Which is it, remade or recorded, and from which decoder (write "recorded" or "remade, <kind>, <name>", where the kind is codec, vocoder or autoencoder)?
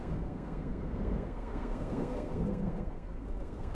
remade, codec, SNAC